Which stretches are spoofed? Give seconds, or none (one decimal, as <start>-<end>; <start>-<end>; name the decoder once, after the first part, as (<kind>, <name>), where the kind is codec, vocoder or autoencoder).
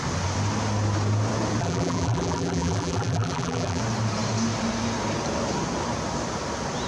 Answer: 1.6-3.8 (vocoder, BigVGAN v2)